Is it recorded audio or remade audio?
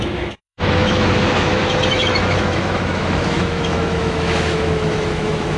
remade